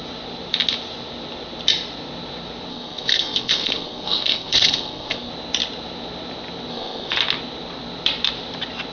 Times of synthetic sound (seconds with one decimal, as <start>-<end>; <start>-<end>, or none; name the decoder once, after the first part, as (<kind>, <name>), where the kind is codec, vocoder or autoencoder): 2.7-5.3 (codec, SNAC); 6.7-7.2